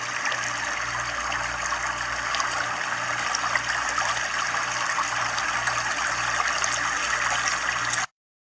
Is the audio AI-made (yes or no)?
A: no